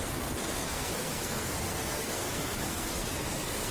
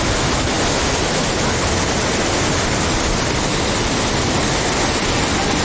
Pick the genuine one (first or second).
second